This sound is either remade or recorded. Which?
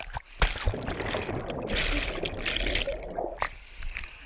recorded